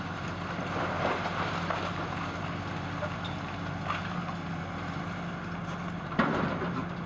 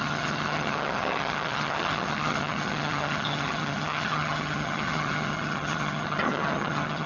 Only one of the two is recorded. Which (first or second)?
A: first